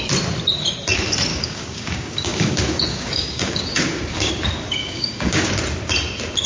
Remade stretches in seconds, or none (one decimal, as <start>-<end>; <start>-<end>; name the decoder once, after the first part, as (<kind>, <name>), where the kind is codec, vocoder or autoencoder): 1.3-4.3 (codec, DAC); 4.8-5.5

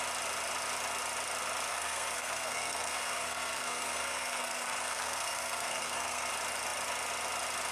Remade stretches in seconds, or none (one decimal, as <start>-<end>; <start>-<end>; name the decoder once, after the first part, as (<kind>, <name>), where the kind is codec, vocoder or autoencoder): 1.7-6.3 (codec, SNAC)

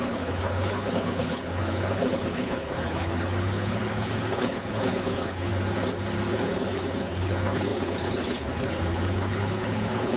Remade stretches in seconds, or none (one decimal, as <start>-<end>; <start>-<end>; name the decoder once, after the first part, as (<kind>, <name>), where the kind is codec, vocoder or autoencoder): 0.0-5.5 (codec, HILCodec); 6.3-10.2

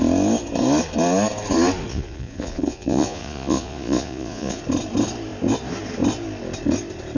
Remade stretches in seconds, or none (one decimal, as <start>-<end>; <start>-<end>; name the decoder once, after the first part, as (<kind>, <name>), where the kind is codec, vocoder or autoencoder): 1.9-4.6 (vocoder, Vocos)

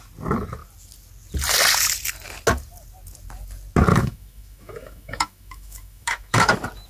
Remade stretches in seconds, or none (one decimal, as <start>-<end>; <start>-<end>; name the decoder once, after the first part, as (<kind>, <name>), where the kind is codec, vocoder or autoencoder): 3.9-6.5 (autoencoder, DAC-VAE)

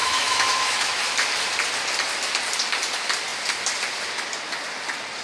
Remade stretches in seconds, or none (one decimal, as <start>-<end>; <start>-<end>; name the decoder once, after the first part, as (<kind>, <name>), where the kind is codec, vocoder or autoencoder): 0.0-1.0 (autoencoder, DAC-VAE)

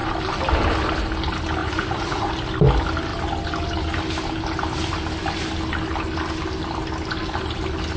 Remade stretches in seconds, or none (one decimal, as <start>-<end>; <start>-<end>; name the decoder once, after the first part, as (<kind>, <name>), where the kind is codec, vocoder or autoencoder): 1.6-2.3 (vocoder, Vocos)

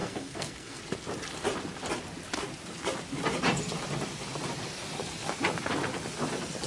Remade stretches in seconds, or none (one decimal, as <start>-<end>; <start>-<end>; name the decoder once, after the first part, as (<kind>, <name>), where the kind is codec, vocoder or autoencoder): 0.0-0.8 (codec, SNAC)